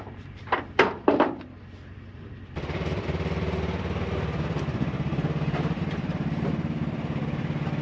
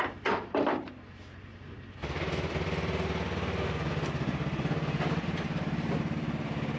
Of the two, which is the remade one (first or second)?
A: first